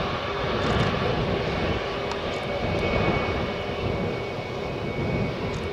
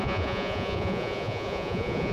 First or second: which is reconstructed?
second